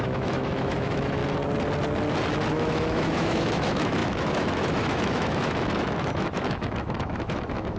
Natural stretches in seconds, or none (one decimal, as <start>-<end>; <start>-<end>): 1.2-2.5